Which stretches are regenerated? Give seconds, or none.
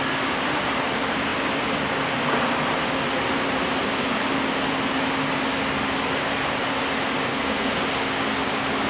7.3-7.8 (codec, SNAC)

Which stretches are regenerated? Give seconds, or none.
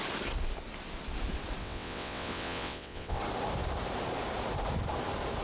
1.6-3.2 (vocoder, WaveNeXt)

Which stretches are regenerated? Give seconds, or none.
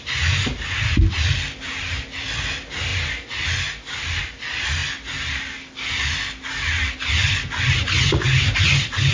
none